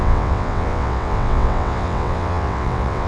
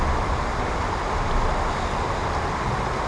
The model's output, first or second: first